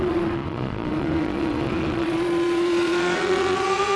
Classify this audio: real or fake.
fake